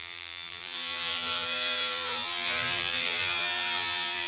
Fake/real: fake